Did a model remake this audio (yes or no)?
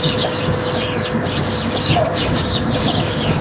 yes